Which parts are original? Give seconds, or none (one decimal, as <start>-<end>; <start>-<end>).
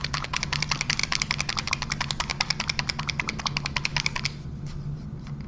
0.0-5.5